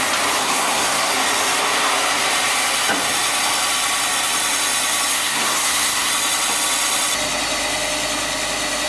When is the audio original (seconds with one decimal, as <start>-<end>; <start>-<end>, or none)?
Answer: 0.0-0.4; 1.1-5.1; 6.1-8.9